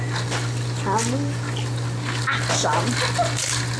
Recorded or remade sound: recorded